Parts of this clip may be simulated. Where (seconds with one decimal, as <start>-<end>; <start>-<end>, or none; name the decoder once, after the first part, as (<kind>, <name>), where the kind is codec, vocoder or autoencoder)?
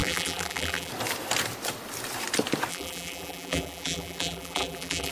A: 0.0-0.9 (vocoder, BigVGAN v2); 2.7-5.1